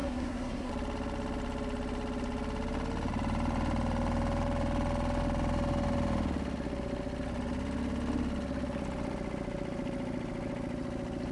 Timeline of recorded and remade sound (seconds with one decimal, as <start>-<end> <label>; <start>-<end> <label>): 0.0-0.7 remade; 0.7-11.3 recorded